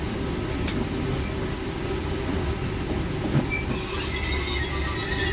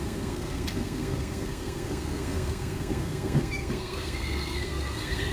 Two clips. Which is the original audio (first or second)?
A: first